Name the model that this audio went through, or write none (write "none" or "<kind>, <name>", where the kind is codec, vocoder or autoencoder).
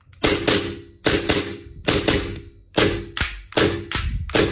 none